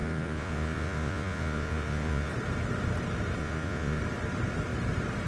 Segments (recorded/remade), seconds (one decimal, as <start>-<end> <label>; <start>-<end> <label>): 0.0-2.3 remade; 2.3-3.4 recorded; 3.4-4.0 remade; 4.0-5.3 recorded